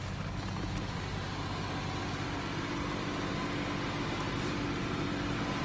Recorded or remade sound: recorded